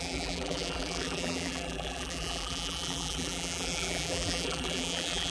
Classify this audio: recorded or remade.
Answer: remade